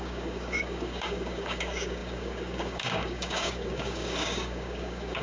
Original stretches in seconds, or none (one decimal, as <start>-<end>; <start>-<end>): none